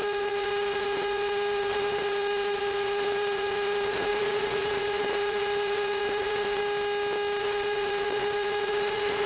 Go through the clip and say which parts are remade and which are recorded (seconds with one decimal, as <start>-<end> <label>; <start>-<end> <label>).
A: 0.0-6.6 remade; 6.6-7.4 recorded; 7.4-9.3 remade